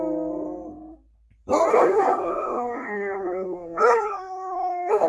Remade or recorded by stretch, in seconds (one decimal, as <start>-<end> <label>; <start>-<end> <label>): 0.0-1.7 recorded; 1.7-5.1 remade